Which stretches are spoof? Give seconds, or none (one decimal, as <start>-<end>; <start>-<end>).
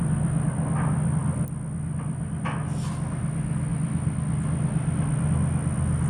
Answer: none